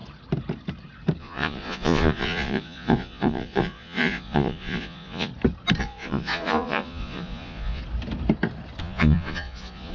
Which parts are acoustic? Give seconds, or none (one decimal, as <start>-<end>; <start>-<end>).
0.0-1.2; 5.3-5.8; 7.8-8.8